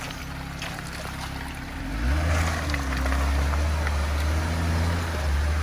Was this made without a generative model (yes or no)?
yes